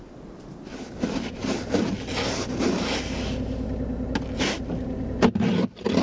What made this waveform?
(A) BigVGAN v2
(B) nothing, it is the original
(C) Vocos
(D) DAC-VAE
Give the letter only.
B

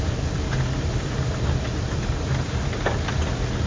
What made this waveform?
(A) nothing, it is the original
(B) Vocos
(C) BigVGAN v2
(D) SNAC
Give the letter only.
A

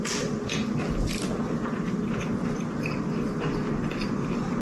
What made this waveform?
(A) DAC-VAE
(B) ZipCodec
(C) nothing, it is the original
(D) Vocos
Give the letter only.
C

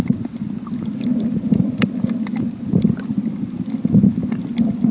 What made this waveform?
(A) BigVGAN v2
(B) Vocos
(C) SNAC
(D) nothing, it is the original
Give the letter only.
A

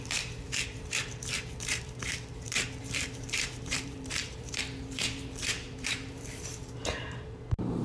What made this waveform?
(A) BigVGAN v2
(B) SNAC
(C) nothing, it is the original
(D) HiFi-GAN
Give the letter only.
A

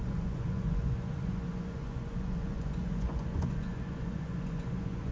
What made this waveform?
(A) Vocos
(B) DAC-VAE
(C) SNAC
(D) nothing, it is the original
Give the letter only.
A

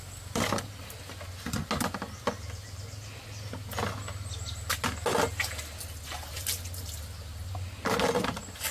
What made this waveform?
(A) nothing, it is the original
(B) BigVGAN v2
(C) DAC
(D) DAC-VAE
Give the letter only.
A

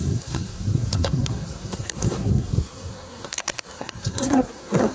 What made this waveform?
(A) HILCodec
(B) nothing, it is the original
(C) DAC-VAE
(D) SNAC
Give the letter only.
D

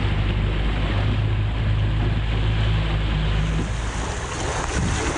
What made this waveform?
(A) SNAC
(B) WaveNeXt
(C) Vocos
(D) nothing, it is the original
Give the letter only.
D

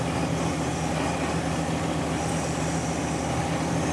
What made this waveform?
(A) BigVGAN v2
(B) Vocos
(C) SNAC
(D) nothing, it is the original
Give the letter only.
D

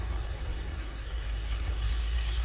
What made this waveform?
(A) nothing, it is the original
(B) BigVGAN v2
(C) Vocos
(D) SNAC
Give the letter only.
D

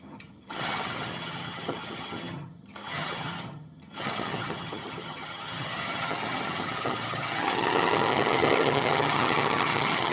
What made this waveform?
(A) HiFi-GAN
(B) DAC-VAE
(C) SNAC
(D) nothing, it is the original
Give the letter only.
A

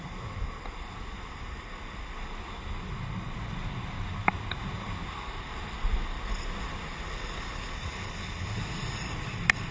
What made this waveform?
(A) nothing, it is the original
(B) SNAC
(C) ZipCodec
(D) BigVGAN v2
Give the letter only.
A